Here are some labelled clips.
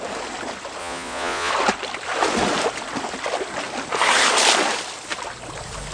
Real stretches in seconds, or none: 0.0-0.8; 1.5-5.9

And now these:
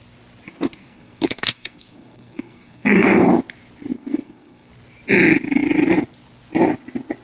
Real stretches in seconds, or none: 0.0-0.8; 3.3-3.9; 4.7-7.2

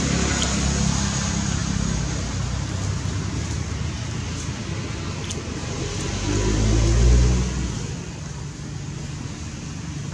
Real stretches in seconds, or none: 0.0-10.1